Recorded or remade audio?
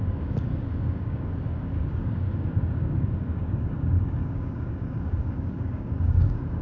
remade